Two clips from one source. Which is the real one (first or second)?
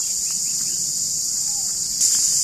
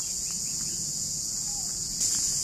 first